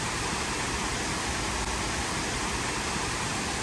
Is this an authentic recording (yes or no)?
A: yes